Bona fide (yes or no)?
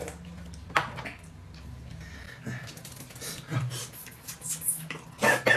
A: yes